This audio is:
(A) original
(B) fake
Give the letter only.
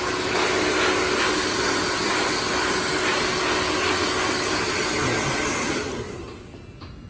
A